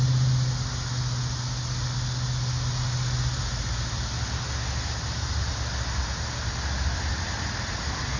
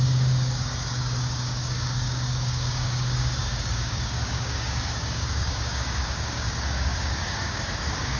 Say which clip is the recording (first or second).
first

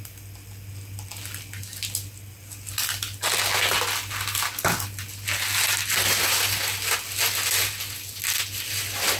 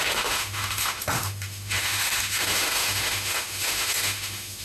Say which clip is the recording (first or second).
first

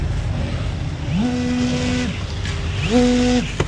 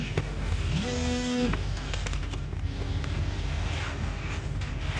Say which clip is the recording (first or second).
first